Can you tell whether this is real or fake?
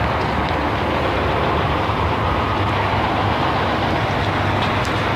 real